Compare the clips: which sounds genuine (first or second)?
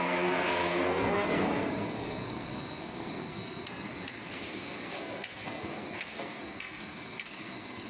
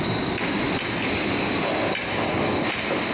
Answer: second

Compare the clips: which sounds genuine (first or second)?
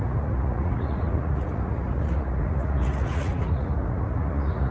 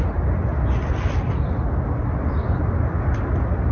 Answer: second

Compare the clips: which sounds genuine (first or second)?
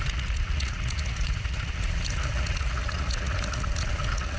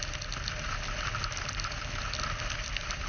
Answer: second